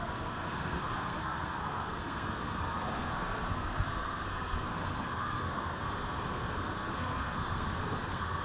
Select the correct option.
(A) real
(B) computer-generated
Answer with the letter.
B